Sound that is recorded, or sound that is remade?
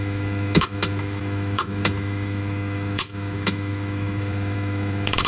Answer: remade